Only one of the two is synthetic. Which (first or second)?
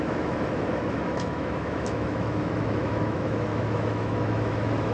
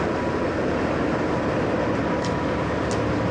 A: first